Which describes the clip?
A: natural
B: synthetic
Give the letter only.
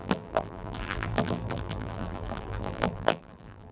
B